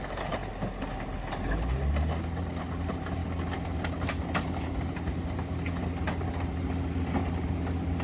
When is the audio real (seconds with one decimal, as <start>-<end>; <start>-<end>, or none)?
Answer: 0.0-8.0